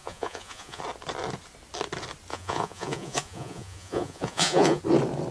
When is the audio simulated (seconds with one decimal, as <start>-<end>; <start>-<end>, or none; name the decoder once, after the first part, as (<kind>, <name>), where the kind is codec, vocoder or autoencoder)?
0.0-0.8 (vocoder, Vocos); 2.3-4.8